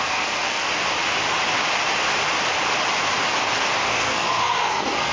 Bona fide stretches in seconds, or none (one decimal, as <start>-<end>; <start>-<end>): 0.7-3.8